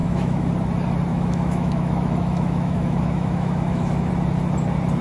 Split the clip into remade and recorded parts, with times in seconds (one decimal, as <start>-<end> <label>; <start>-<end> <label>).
0.0-0.5 remade; 0.5-1.1 recorded; 1.1-4.1 remade; 4.1-5.0 recorded